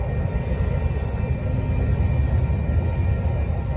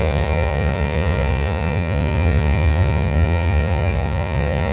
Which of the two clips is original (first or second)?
first